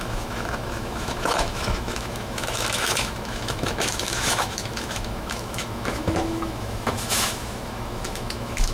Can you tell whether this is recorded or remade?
remade